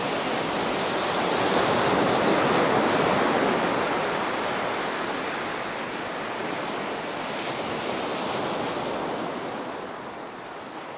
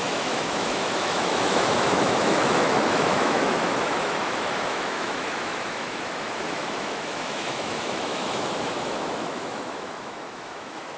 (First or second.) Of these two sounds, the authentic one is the first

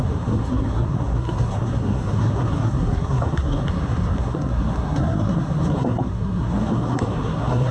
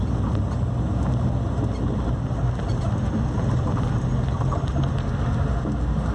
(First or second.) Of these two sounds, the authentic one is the second